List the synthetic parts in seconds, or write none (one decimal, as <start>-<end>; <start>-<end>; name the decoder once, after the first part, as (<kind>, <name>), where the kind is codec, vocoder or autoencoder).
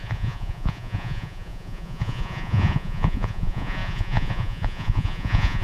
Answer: 0.0-5.6 (vocoder, Vocos)